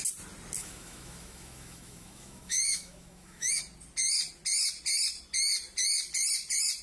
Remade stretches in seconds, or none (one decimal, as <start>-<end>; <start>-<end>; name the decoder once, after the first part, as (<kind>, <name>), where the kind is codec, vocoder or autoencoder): 0.6-3.6 (autoencoder, DAC-VAE)

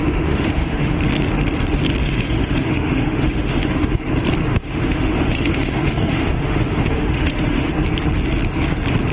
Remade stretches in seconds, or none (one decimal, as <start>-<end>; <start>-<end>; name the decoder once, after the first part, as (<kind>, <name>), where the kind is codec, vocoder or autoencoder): 0.0-1.0 (autoencoder, DAC-VAE); 2.0-4.0; 4.5-7.7

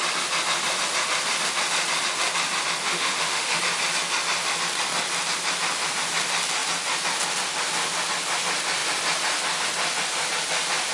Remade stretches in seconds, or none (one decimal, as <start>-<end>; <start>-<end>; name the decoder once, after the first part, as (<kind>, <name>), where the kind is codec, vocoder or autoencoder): 2.8-3.6 (autoencoder, DAC-VAE)

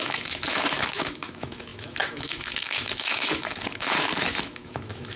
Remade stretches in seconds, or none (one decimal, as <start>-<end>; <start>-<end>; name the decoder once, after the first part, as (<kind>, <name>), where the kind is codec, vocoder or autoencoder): 0.0-5.2 (autoencoder, DAC-VAE)